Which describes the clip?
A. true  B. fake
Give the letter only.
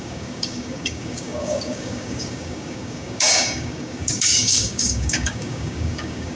B